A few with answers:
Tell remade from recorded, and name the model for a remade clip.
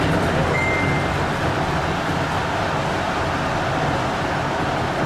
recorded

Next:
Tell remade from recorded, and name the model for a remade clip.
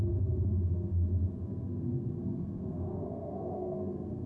remade, codec, SNAC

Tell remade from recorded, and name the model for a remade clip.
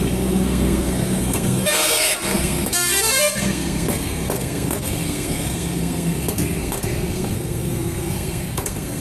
remade, codec, SNAC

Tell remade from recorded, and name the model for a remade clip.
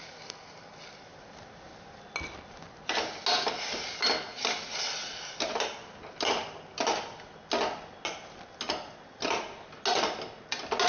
recorded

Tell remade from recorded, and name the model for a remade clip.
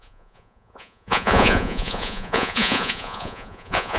remade, vocoder, Vocos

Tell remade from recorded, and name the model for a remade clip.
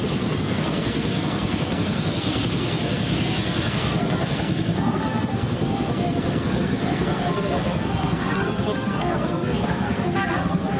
remade, codec, SNAC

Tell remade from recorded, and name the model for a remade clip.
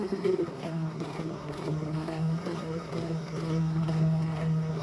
remade, codec, SNAC